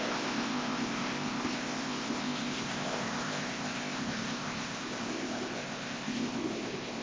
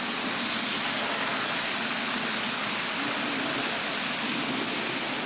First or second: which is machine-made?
first